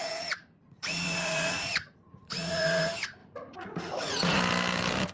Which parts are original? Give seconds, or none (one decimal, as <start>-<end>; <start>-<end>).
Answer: 2.8-3.2; 4.4-5.1